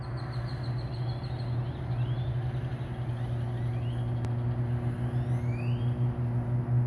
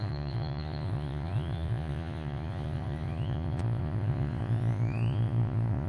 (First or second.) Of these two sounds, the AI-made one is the second